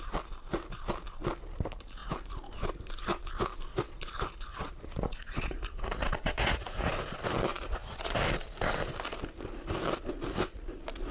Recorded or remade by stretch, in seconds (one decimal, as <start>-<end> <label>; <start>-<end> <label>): 0.0-4.5 recorded; 4.5-6.9 remade; 6.9-7.5 recorded; 7.5-8.2 remade; 8.2-11.1 recorded

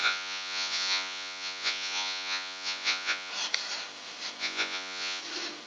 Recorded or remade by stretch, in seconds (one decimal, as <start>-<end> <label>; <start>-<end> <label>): 0.0-3.3 remade; 3.3-4.4 recorded; 4.4-5.2 remade; 5.2-5.7 recorded

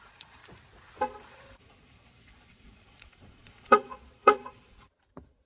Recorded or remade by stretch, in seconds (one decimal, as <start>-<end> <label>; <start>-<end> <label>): 0.0-0.4 remade; 0.4-1.2 recorded; 1.2-5.5 remade

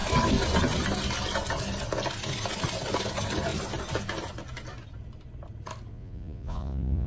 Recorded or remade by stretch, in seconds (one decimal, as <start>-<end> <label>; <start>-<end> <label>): 0.0-5.9 recorded; 5.9-7.1 remade

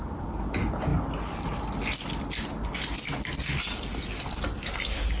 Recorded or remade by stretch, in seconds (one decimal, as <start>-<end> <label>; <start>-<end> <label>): 0.0-5.2 recorded

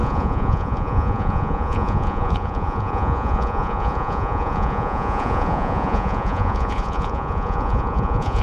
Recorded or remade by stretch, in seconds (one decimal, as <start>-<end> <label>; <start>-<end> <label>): 0.0-8.4 remade